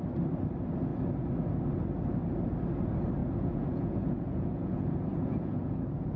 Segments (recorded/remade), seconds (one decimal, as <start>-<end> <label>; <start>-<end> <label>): 0.0-3.2 recorded; 3.2-6.2 remade